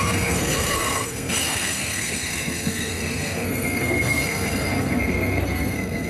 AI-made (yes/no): yes